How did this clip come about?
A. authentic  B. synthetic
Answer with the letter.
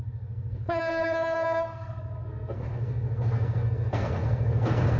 B